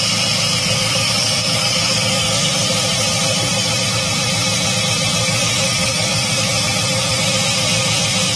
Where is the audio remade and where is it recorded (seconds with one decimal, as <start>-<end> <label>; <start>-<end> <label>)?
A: 0.0-0.6 recorded; 0.6-2.5 remade; 2.5-5.8 recorded; 5.8-6.3 remade; 6.3-8.4 recorded